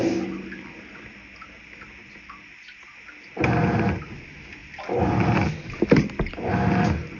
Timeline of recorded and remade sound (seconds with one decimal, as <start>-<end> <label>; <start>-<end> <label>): 0.0-7.2 recorded

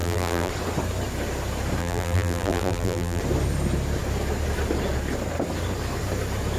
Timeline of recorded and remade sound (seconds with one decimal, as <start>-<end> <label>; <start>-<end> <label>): 0.0-0.5 remade; 0.5-1.8 recorded; 1.8-3.2 remade; 3.2-6.6 recorded

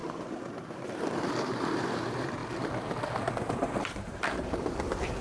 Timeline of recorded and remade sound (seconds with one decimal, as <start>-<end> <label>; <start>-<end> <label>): 0.0-2.4 remade; 2.4-3.3 recorded; 3.3-5.2 remade

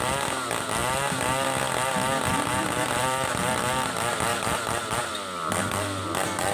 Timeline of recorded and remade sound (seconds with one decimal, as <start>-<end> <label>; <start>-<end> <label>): 0.0-2.3 recorded; 2.3-3.6 remade; 3.6-4.3 recorded; 4.3-5.1 remade; 5.1-6.5 recorded

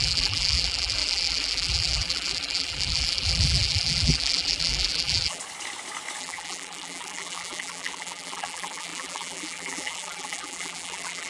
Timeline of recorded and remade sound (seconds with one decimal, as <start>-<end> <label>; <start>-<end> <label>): 0.0-5.4 remade; 5.4-6.2 recorded; 6.2-11.3 remade

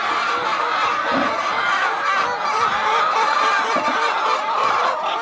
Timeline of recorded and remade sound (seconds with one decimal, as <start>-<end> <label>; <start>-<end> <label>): 0.0-5.2 recorded